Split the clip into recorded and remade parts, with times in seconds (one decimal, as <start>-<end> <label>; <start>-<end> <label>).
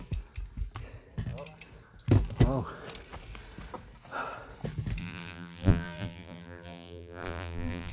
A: 0.0-5.0 recorded; 5.0-7.9 remade